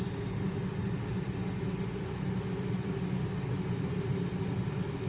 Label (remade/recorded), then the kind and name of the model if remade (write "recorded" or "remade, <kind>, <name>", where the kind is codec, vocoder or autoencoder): recorded